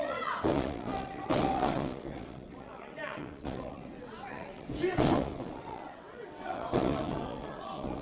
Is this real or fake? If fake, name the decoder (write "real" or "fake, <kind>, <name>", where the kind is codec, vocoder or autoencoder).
fake, vocoder, WaveNeXt